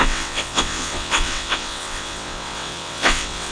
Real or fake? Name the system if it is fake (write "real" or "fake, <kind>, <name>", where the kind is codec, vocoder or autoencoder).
fake, vocoder, WaveNeXt